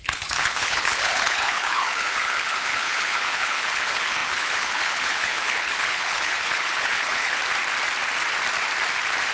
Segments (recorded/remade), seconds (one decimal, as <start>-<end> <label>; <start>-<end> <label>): 0.0-7.4 remade; 7.4-9.3 recorded